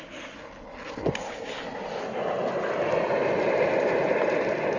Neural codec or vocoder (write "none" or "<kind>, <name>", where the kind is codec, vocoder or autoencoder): none